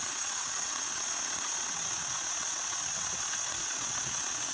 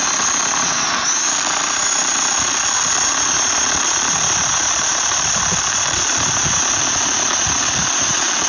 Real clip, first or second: second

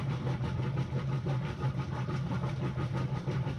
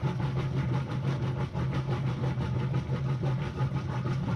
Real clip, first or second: second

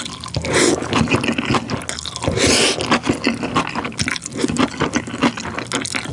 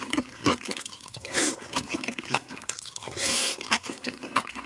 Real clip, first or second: first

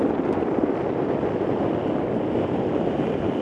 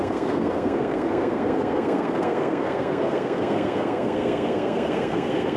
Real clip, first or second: first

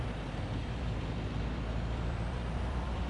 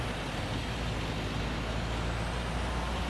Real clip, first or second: second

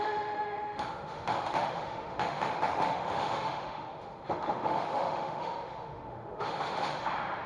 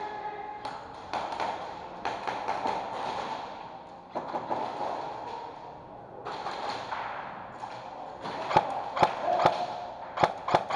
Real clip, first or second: second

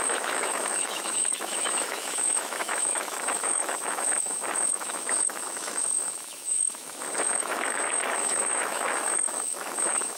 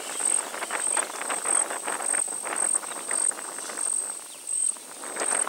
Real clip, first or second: second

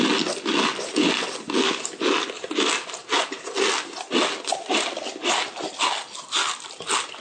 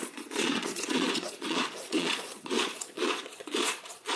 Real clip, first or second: first